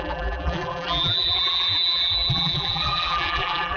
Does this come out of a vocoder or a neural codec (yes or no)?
yes